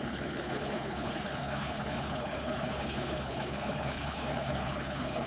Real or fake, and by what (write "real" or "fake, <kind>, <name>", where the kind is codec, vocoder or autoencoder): fake, codec, HILCodec